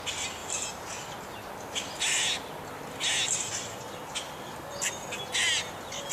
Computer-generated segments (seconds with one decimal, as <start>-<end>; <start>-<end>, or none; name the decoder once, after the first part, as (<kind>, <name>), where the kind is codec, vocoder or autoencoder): none